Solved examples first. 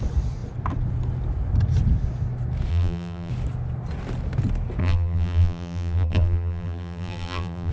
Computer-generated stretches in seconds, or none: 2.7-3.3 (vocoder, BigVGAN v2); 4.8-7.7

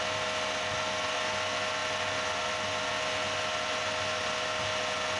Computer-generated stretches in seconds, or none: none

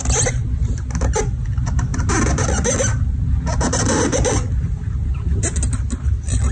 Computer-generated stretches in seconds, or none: none

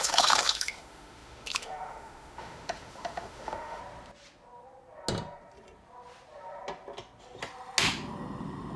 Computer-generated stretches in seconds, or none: 0.0-3.8 (autoencoder, DAC-VAE)